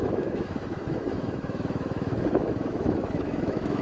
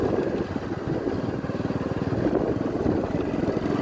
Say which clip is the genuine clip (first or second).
second